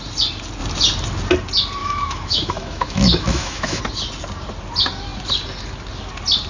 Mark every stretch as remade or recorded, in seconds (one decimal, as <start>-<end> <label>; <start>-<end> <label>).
0.0-1.8 recorded; 1.8-3.8 remade; 3.8-6.5 recorded